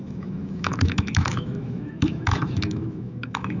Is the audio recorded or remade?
remade